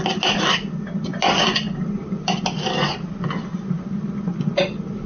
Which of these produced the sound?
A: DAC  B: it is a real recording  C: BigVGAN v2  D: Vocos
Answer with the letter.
B